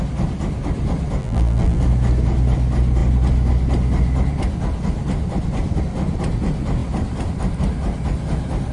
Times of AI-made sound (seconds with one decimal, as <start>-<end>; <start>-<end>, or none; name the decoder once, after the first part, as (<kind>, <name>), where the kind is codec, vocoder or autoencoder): 1.2-1.8 (vocoder, BigVGAN v2)